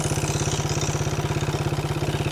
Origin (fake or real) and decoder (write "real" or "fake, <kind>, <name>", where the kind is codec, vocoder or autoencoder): real